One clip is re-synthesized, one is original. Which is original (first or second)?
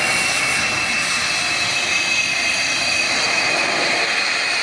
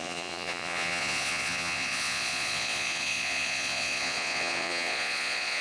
first